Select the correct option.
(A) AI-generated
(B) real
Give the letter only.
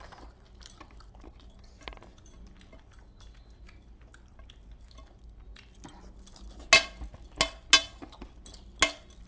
B